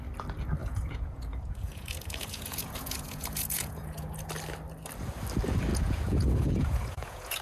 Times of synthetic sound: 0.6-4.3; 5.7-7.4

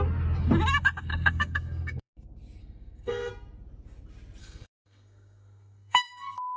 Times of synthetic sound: 1.1-2.1; 2.6-3.3; 4.4-6.6